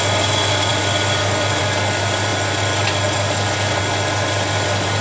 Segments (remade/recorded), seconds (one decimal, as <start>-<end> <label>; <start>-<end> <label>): 0.0-5.0 recorded